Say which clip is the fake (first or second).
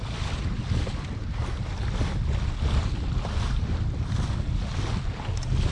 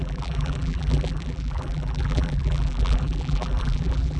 second